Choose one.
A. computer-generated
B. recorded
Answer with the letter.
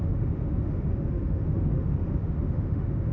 A